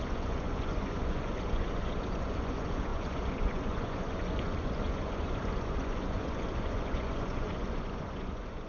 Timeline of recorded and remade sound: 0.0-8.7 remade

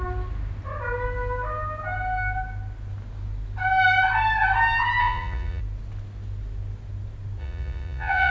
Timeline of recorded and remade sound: 0.0-5.0 recorded; 5.0-5.6 remade; 5.6-7.4 recorded; 7.4-8.3 remade